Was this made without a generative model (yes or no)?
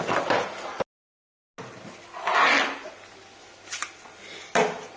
yes